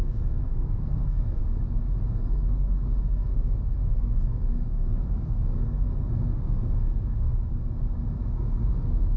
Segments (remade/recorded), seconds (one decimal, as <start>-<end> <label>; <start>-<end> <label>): 0.0-1.4 remade; 1.4-2.0 recorded; 2.0-7.3 remade; 7.3-8.3 recorded; 8.3-9.2 remade